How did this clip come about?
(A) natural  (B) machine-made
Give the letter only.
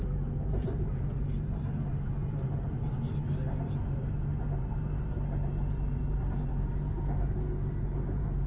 B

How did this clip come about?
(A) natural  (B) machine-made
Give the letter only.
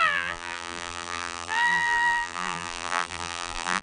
B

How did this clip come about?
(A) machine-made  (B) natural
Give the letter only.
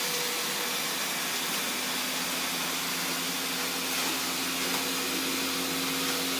B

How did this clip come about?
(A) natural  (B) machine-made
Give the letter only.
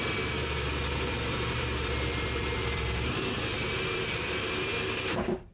B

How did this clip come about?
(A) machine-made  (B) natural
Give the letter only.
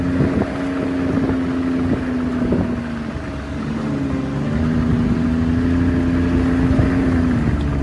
B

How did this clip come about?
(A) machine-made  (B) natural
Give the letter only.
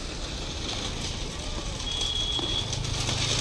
B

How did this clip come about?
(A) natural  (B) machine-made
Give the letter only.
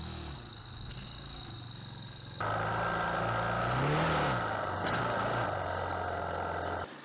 A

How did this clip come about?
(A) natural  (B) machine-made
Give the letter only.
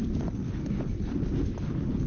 A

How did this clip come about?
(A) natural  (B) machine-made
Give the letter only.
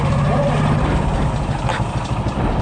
A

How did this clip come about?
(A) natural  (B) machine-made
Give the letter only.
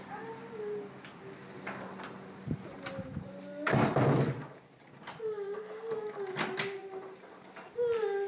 A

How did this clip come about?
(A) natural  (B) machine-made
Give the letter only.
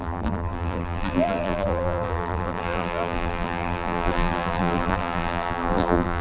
B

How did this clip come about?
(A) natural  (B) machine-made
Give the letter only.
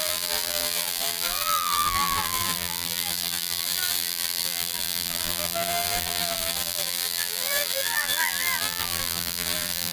B